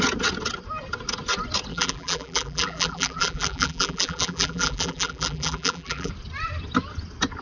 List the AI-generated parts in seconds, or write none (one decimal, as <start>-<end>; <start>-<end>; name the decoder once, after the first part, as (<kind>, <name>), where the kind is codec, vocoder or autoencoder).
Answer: 1.7-6.1 (vocoder, BigVGAN v2)